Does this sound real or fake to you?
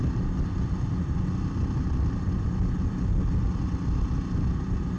real